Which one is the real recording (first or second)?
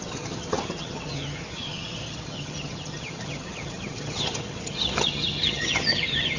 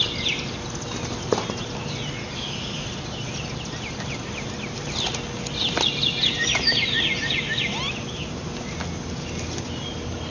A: second